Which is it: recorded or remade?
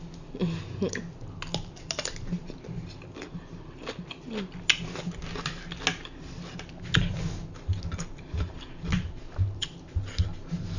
recorded